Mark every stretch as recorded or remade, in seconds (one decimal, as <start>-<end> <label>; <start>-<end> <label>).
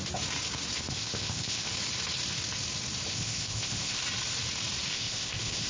0.0-0.9 recorded; 0.9-1.7 remade; 1.7-3.1 recorded; 3.1-4.0 remade; 4.0-4.9 recorded; 4.9-5.7 remade